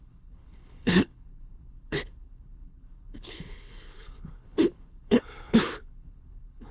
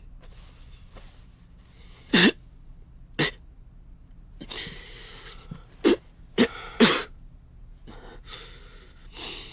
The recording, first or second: second